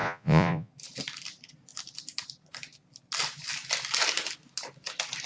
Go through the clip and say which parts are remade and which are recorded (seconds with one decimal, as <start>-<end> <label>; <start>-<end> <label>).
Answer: 0.0-0.7 remade; 0.7-5.3 recorded